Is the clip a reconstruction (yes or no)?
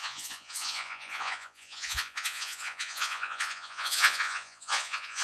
yes